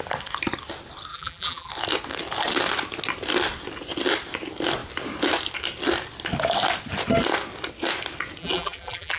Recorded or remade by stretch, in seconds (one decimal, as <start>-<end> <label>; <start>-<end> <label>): 0.0-1.1 recorded; 1.1-1.7 remade; 1.7-8.4 recorded; 8.4-9.2 remade